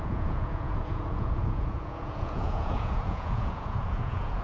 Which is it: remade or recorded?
remade